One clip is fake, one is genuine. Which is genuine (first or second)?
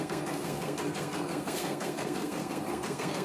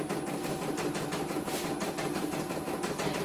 second